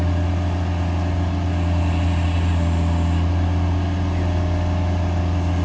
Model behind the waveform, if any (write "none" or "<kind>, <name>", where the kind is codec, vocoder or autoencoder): none